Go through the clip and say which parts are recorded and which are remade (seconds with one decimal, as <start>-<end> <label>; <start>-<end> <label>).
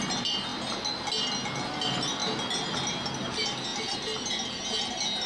0.0-5.3 recorded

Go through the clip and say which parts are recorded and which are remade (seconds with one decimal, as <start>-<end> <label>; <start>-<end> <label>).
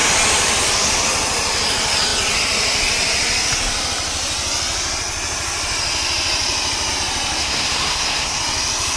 0.0-7.4 recorded; 7.4-8.4 remade; 8.4-9.0 recorded